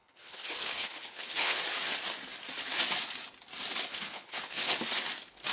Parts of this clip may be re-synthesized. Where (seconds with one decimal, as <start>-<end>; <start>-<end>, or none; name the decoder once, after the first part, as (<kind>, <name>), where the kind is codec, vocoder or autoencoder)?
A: 0.0-1.6 (codec, HILCodec); 3.9-4.8